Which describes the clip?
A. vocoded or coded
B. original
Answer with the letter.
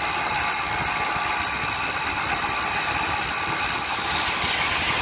B